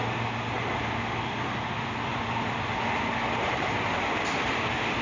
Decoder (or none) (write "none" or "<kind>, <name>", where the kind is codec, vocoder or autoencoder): none